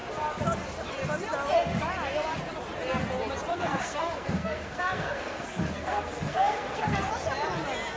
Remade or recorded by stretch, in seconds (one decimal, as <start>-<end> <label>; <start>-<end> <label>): 0.0-3.5 recorded; 3.5-7.1 remade; 7.1-8.0 recorded